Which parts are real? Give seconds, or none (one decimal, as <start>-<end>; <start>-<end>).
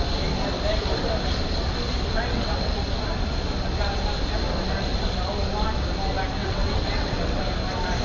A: 0.0-2.1; 2.7-6.4; 7.4-8.0